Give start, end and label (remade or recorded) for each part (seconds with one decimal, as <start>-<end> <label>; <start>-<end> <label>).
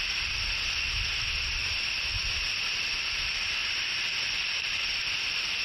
0.0-5.6 recorded